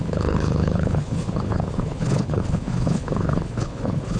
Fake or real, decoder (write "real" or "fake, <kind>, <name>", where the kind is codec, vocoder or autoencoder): fake, codec, HILCodec